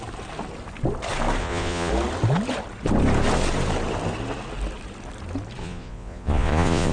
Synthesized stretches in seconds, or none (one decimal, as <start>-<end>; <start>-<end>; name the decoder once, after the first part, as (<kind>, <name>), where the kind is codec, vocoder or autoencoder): 1.4-1.9 (vocoder, Vocos); 5.6-6.9